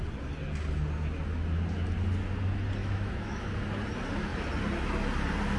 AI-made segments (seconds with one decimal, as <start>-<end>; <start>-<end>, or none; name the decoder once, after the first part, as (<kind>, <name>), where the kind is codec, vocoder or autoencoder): 2.8-3.5 (autoencoder, DAC-VAE)